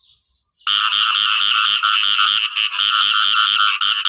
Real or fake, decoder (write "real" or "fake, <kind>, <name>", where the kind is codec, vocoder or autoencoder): real